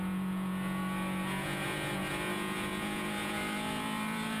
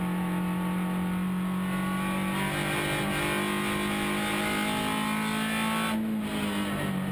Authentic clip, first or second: second